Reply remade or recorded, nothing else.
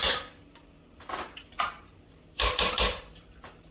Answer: remade